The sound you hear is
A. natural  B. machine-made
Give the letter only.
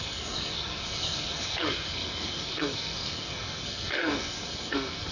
B